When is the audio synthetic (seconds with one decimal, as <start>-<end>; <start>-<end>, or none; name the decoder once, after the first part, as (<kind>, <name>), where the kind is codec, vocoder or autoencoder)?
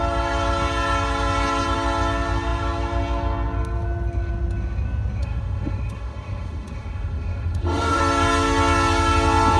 5.2-8.0 (autoencoder, DAC-VAE)